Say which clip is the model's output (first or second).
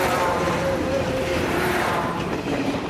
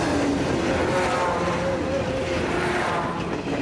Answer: first